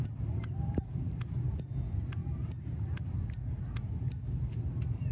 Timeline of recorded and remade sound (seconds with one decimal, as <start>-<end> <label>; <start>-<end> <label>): 0.0-5.1 recorded